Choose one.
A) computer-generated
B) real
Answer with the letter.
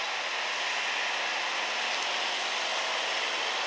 B